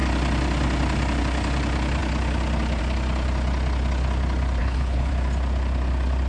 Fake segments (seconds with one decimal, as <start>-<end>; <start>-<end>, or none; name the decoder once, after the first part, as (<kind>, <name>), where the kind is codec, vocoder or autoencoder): 4.6-5.1 (codec, HILCodec)